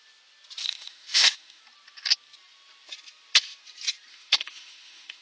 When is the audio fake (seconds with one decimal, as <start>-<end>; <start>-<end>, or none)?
0.6-1.6; 4.1-5.2